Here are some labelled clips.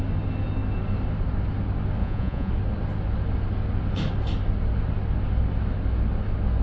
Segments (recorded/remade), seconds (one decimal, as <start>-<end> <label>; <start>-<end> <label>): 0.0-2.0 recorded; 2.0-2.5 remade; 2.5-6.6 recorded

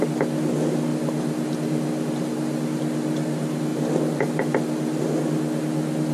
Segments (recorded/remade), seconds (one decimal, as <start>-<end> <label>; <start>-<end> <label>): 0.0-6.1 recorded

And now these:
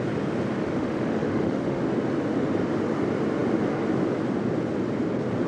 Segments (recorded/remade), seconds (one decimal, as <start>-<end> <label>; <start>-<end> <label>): 0.0-0.6 recorded; 0.6-1.8 remade; 1.8-5.5 recorded

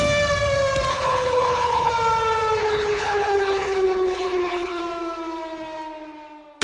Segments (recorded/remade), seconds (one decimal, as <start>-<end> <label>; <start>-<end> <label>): 0.0-0.9 recorded; 0.9-1.9 remade; 1.9-2.6 recorded; 2.6-4.8 remade; 4.8-6.6 recorded

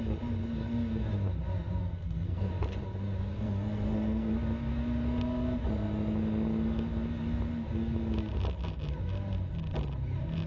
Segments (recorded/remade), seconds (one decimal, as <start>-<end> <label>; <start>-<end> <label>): 0.0-1.8 recorded; 1.8-2.5 remade; 2.5-3.3 recorded; 3.3-4.3 remade; 4.3-10.5 recorded

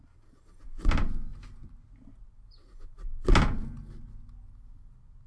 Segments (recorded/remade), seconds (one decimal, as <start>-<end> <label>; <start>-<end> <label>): 0.0-5.3 recorded

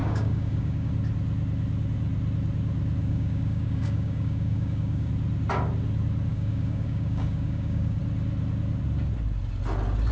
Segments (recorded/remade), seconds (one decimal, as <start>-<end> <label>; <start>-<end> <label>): 0.0-0.9 remade; 0.9-3.0 recorded; 3.0-5.1 remade; 5.1-6.3 recorded; 6.3-8.0 remade; 8.0-10.1 recorded

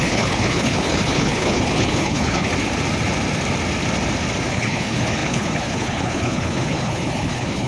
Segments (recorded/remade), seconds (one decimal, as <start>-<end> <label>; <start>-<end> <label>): 0.0-2.5 remade; 2.5-4.5 recorded; 4.5-7.7 remade